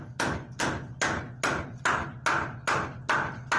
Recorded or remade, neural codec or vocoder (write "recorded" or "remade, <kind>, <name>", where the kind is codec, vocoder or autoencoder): recorded